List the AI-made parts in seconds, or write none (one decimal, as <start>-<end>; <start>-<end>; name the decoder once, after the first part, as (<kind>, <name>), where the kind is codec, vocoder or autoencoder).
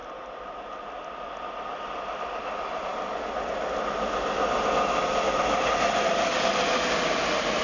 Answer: none